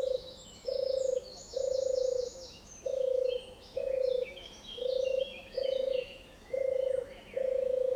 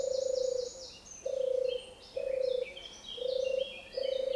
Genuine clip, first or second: second